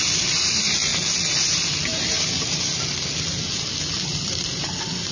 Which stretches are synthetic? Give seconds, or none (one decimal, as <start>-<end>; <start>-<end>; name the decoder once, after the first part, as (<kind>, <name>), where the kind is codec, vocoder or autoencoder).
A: 0.0-0.9 (vocoder, BigVGAN v2); 4.0-5.1